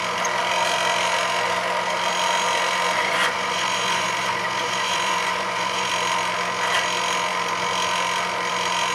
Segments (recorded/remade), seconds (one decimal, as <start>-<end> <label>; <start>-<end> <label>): 0.0-3.0 recorded; 3.0-5.9 remade; 5.9-8.9 recorded